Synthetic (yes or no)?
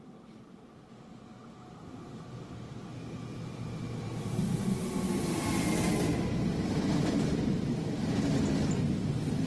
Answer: no